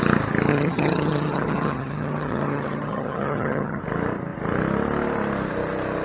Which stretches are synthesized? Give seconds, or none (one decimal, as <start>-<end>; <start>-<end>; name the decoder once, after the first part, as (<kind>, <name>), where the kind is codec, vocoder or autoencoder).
0.5-3.8 (vocoder, HiFi-GAN)